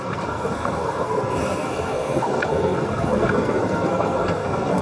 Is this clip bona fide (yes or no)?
no